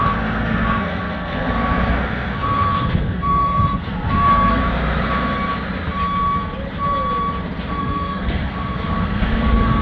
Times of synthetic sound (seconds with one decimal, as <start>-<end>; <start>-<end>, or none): 0.0-4.6; 7.8-9.8